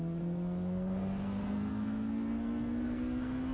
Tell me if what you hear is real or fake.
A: fake